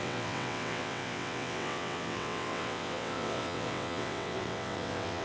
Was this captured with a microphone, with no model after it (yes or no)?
no